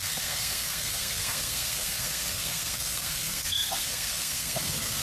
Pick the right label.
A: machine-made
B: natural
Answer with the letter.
A